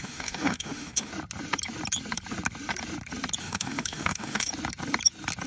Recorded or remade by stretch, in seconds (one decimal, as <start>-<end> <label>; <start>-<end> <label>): 0.0-1.1 remade; 1.1-3.4 recorded; 3.4-4.5 remade; 4.5-5.5 recorded